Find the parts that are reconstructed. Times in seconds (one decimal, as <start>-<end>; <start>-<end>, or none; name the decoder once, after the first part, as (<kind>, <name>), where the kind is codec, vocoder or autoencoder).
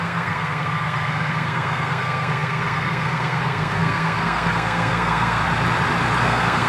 0.0-5.4 (codec, SNAC); 6.2-6.7